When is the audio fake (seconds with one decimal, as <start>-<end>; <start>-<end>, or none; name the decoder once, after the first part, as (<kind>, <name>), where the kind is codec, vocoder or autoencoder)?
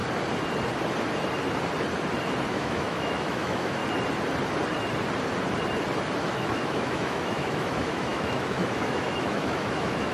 2.5-3.8 (autoencoder, DAC-VAE); 6.2-10.1